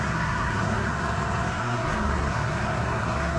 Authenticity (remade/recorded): remade